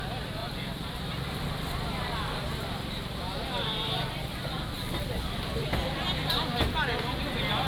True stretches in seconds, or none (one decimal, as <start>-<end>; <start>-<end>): 0.0-0.4; 5.0-7.7